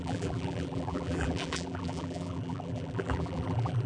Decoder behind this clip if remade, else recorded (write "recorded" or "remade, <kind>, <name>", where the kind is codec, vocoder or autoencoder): remade, vocoder, BigVGAN v2